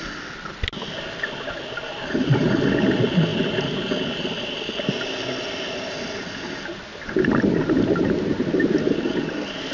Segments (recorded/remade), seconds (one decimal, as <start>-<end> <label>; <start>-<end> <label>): 0.0-2.0 recorded; 2.0-2.5 remade; 2.5-9.7 recorded